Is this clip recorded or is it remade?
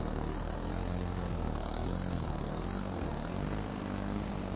remade